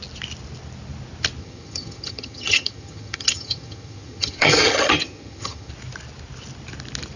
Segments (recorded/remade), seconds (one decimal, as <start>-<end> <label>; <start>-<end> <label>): 0.0-1.4 recorded; 1.4-5.7 remade; 5.7-7.2 recorded